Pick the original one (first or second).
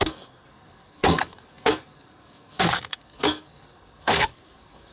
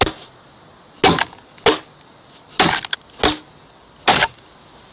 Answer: second